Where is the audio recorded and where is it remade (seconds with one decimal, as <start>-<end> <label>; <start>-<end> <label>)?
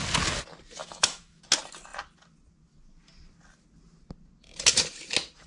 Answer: 0.0-0.8 recorded; 0.8-1.4 remade; 1.4-5.5 recorded